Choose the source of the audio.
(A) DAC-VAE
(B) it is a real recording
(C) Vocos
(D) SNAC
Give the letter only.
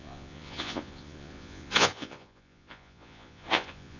C